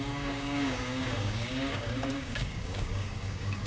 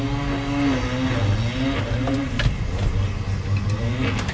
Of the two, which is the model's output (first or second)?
first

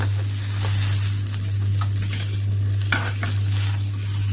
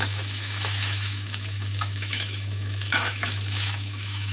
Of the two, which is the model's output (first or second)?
second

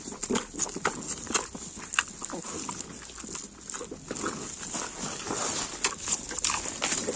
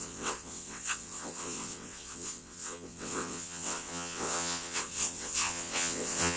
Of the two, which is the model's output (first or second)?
second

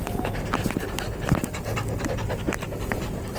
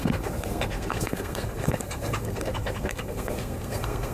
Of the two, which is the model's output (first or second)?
second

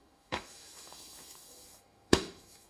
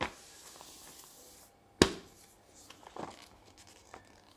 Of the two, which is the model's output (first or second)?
first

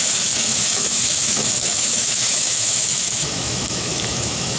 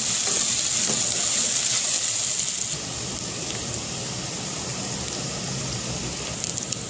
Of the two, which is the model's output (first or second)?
first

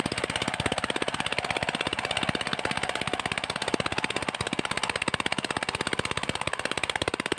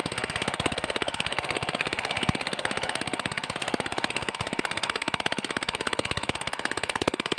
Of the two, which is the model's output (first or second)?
second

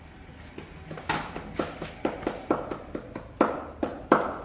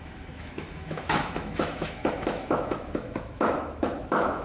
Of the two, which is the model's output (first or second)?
second